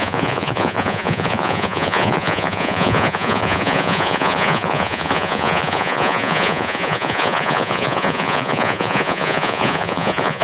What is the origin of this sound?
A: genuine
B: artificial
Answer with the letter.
B